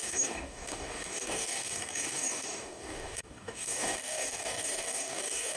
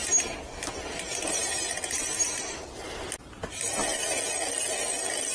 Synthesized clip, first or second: first